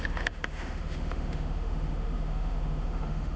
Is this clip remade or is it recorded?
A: remade